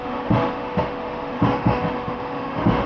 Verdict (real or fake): fake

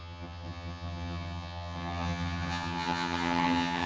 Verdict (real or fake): fake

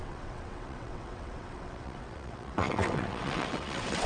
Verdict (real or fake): fake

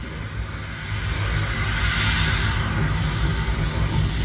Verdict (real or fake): real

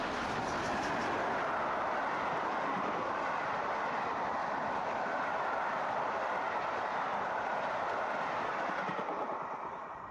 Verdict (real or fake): real